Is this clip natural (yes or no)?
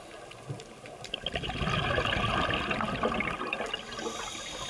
yes